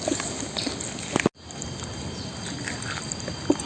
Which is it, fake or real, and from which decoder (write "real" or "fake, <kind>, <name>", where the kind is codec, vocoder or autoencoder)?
real